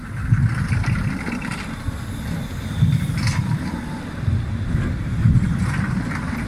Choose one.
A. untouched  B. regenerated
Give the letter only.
A